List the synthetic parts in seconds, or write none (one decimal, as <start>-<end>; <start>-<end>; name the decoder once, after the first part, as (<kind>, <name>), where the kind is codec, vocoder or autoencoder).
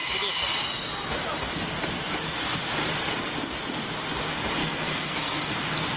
4.6-5.5 (codec, SNAC)